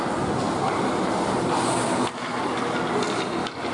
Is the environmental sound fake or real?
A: real